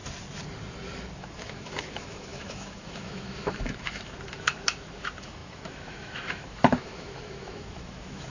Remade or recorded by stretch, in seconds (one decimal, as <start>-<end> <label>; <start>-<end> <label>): 0.0-1.2 recorded; 1.2-8.3 remade